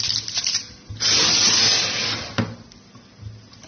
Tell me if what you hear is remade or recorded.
recorded